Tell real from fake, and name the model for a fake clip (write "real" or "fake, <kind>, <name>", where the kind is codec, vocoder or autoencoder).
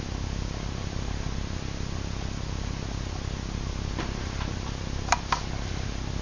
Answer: real